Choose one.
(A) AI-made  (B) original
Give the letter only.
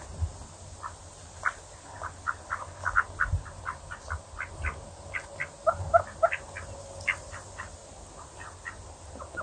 B